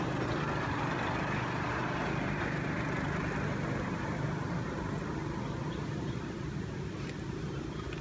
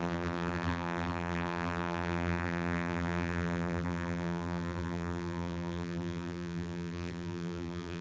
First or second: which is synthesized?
second